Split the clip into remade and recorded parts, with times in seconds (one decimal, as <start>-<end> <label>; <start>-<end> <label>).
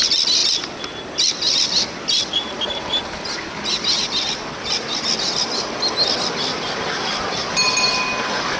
0.0-8.6 recorded